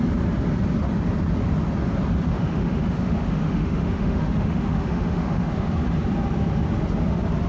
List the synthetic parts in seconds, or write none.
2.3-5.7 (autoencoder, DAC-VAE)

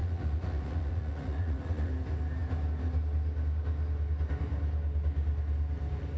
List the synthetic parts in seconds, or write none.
0.0-1.9 (vocoder, Vocos)

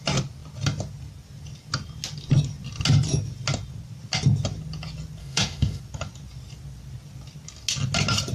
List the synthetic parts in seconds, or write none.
5.2-5.8 (autoencoder, DAC-VAE)

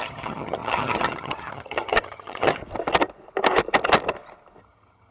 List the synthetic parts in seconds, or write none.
0.0-2.6 (vocoder, HiFi-GAN); 4.6-5.1

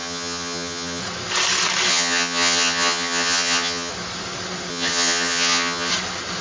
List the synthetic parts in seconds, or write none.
0.0-1.0 (vocoder, HiFi-GAN); 1.9-3.9; 4.7-5.9

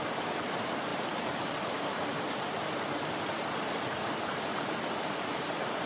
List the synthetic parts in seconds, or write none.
none

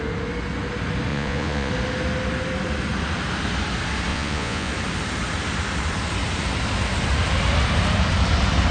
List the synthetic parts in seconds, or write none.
1.1-1.7 (vocoder, Vocos); 4.1-4.7